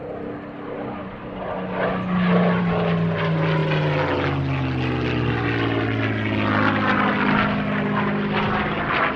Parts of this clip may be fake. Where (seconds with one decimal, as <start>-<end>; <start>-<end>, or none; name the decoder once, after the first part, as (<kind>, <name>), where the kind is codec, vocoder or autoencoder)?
none